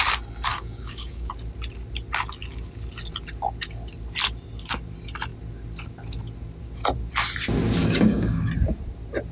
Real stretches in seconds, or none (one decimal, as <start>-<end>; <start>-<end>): 0.0-0.5; 1.3-7.8; 8.5-9.3